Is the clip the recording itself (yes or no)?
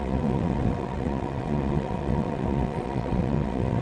no